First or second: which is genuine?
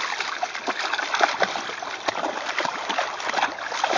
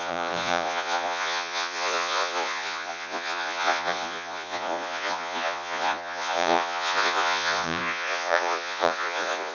first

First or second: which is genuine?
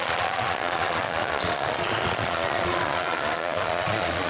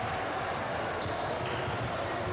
second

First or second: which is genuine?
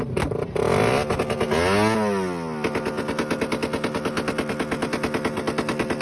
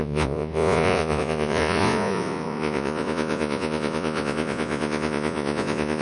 first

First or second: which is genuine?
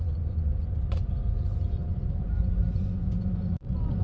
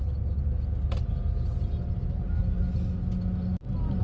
second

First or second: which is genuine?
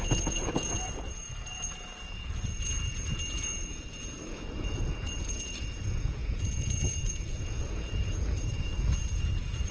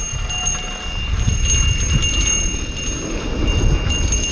second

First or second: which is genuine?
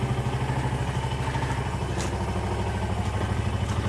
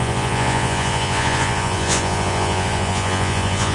first